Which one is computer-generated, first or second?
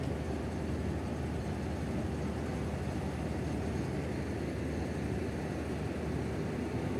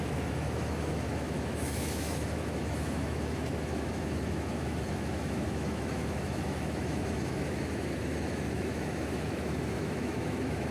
second